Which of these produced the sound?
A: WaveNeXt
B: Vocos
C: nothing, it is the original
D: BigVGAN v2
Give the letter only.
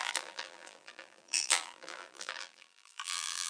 D